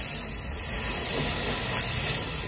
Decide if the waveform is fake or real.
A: real